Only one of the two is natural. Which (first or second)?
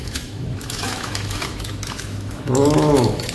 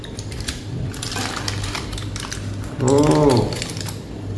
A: second